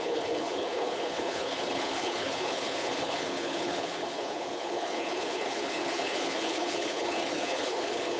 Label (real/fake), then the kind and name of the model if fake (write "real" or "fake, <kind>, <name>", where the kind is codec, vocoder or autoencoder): fake, codec, HILCodec